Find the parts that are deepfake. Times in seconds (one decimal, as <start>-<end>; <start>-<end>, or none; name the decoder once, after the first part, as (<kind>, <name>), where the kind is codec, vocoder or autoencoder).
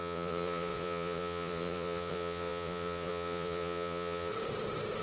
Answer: 0.0-4.3 (vocoder, Vocos)